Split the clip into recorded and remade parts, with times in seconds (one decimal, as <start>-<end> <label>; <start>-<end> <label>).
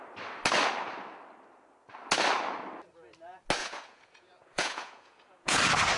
0.0-3.6 recorded; 3.6-5.6 remade; 5.6-6.0 recorded